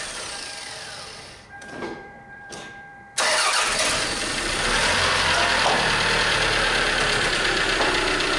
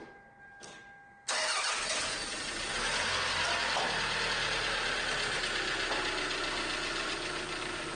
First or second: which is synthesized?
first